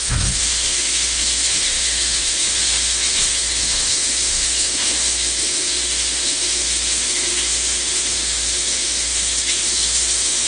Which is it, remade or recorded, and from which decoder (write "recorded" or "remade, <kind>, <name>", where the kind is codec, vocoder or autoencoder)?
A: remade, autoencoder, DAC-VAE